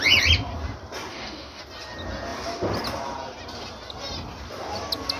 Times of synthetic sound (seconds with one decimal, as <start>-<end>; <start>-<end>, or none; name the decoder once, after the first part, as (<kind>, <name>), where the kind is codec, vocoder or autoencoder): 1.1-1.6 (codec, DAC)